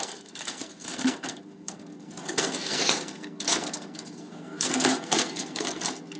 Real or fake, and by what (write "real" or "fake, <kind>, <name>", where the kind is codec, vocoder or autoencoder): fake, codec, SNAC